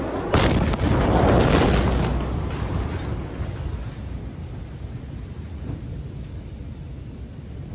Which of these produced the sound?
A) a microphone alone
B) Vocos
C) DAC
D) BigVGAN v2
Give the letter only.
A